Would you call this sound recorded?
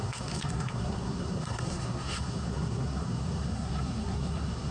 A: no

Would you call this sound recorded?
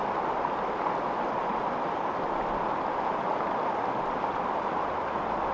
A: yes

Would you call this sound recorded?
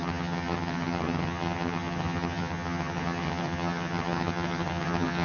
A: no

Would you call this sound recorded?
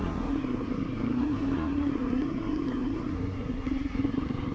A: no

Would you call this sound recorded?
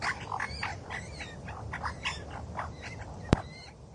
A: yes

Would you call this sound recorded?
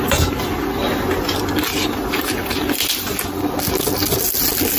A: yes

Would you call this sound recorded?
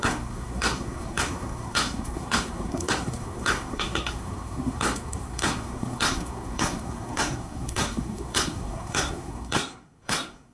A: no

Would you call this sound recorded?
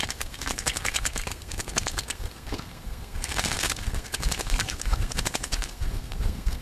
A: no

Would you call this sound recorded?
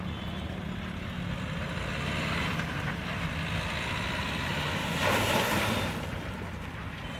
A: yes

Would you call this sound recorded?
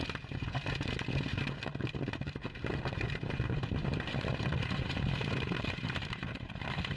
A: no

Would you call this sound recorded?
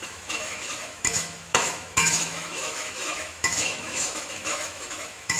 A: no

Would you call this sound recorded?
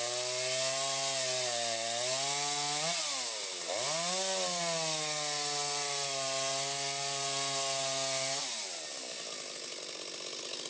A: yes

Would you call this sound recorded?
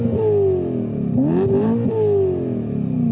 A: yes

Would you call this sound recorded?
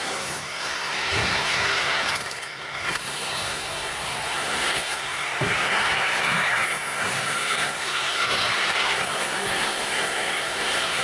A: no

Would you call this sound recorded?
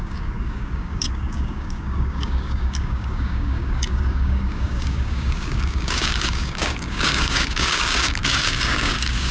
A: no